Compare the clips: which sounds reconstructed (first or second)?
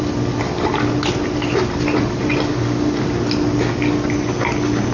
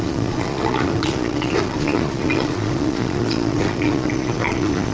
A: second